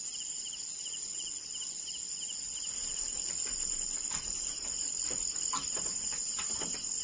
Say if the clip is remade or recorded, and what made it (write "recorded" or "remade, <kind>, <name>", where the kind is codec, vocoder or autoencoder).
recorded